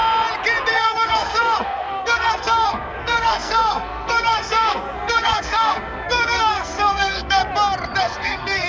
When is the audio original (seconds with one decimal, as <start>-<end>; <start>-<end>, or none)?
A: 0.0-0.7; 7.4-8.0